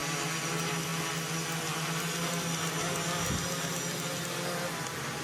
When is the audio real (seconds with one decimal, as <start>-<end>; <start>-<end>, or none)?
0.0-5.2